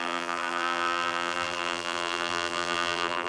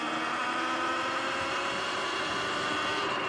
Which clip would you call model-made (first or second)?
first